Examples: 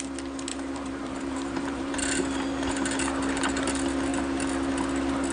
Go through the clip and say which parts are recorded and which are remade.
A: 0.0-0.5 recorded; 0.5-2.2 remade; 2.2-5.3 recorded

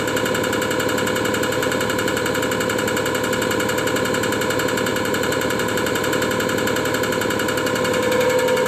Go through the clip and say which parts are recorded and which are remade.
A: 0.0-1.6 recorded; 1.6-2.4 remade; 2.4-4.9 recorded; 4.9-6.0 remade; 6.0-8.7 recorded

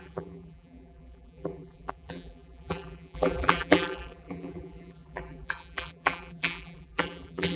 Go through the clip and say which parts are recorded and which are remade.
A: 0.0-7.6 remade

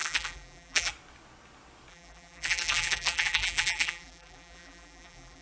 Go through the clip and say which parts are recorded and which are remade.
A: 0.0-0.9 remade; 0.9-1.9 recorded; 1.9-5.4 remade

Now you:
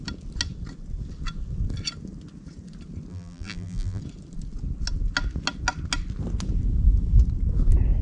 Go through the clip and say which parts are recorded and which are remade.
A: 0.0-3.1 recorded; 3.1-4.0 remade; 4.0-8.0 recorded